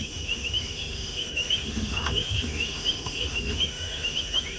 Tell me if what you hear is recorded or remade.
remade